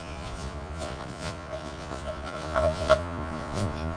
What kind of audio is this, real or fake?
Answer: fake